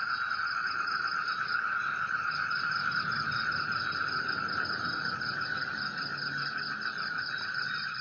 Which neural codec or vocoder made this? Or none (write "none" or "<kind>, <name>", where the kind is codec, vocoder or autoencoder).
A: none